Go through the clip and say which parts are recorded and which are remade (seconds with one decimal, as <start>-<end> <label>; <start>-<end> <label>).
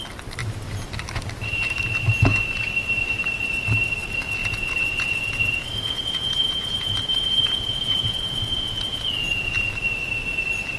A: 0.0-4.4 recorded; 4.4-9.7 remade; 9.7-10.8 recorded